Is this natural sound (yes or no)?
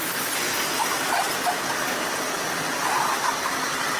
yes